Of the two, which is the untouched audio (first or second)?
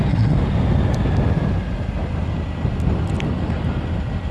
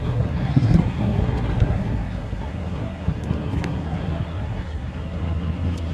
first